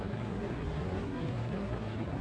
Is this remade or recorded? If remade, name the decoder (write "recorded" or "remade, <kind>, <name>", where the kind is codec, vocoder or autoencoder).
remade, codec, SNAC